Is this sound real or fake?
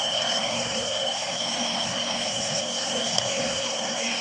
fake